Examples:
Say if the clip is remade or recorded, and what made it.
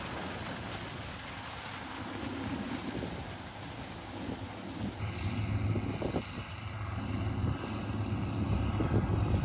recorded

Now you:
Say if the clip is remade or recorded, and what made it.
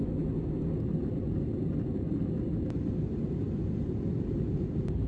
recorded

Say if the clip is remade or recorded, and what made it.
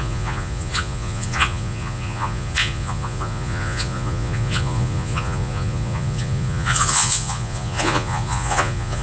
remade, vocoder, Vocos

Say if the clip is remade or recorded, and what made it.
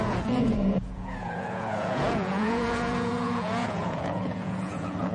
remade, vocoder, Vocos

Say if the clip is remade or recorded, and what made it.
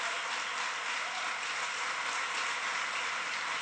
recorded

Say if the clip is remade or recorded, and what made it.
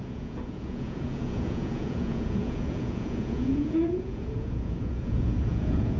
remade, vocoder, Vocos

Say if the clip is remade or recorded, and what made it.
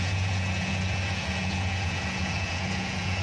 remade, vocoder, Vocos